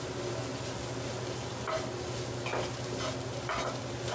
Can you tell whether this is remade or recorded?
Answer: recorded